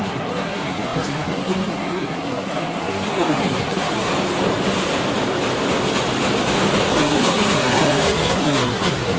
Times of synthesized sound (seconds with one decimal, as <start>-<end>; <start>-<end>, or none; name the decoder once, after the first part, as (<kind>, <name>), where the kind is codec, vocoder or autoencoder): 0.0-4.1 (codec, SNAC); 6.9-9.2